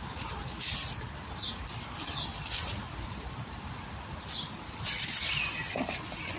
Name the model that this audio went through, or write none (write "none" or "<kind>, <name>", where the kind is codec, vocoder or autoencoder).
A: none